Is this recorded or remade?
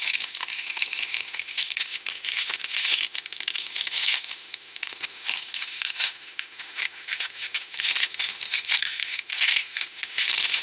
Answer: remade